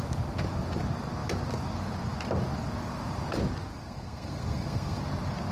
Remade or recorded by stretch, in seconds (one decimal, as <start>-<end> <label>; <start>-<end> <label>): 0.0-3.7 recorded; 3.7-5.0 remade; 5.0-5.5 recorded